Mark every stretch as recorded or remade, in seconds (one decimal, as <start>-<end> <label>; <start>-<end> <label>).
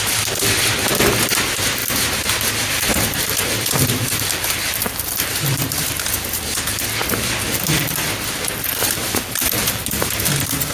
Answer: 0.0-1.8 recorded; 1.8-6.4 remade; 6.4-8.8 recorded; 8.8-10.1 remade; 10.1-10.7 recorded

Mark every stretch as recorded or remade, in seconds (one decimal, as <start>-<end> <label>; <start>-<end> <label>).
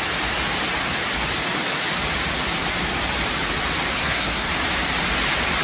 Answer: 0.0-3.9 recorded; 3.9-4.5 remade; 4.5-5.6 recorded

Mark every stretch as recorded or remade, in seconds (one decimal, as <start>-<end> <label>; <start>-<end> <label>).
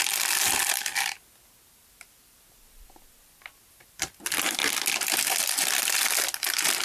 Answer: 0.0-6.8 recorded